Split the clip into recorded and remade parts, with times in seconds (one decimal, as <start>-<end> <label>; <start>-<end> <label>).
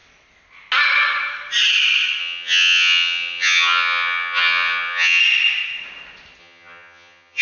0.0-2.2 recorded; 2.2-5.2 remade; 5.2-6.4 recorded; 6.4-7.4 remade